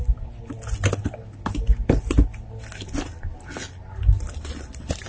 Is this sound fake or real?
real